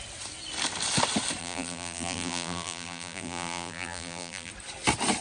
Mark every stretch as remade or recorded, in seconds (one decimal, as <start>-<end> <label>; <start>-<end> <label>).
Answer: 0.0-1.4 recorded; 1.4-4.5 remade; 4.5-5.2 recorded